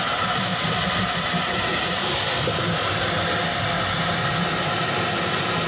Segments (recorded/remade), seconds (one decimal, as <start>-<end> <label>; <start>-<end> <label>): 0.0-5.7 recorded